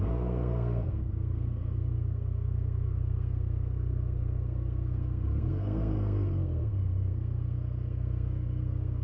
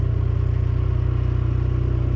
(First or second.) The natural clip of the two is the second